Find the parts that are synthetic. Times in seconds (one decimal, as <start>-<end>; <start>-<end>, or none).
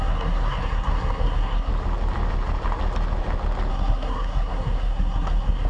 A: 0.0-1.7; 3.7-5.7